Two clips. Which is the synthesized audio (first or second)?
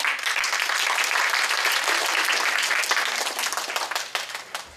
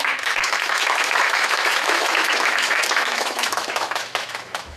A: second